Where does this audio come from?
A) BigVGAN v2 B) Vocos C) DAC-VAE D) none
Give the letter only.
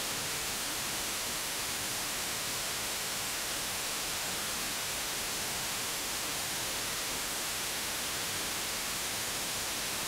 C